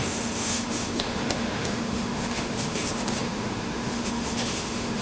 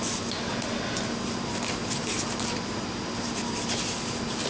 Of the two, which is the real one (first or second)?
second